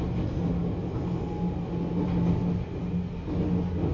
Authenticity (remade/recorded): recorded